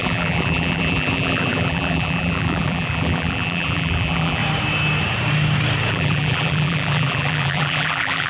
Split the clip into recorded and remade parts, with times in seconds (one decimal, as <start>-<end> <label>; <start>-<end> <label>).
0.0-4.4 remade; 4.4-5.9 recorded; 5.9-8.3 remade

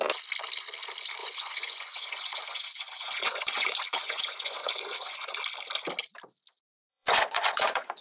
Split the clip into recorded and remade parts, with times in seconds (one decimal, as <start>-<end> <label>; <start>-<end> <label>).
0.0-1.2 recorded; 1.2-5.4 remade; 5.4-6.9 recorded; 6.9-8.0 remade

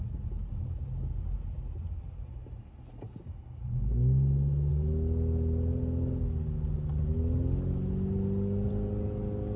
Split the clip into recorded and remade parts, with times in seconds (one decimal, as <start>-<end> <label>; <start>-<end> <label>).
0.0-9.6 recorded

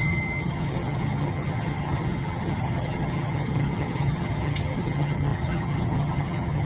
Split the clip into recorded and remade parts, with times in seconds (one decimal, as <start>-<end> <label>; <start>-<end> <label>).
0.0-6.7 remade